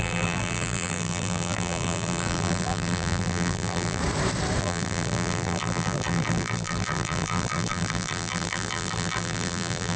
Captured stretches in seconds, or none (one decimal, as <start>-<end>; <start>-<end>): 4.0-4.6